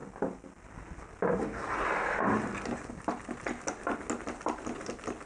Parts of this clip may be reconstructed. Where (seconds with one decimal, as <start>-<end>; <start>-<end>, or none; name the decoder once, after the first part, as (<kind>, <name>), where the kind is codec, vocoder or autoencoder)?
none